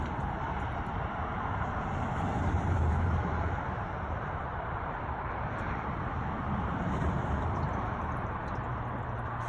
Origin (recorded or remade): remade